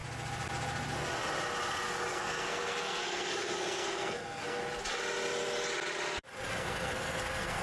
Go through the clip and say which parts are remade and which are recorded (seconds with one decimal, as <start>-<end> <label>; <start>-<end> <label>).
0.0-2.1 recorded; 2.1-4.6 remade; 4.6-6.5 recorded; 6.5-7.6 remade